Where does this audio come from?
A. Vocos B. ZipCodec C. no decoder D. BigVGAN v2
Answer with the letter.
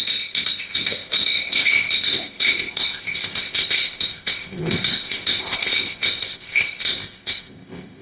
B